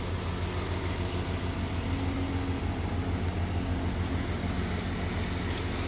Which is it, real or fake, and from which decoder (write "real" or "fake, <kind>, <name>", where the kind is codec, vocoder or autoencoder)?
real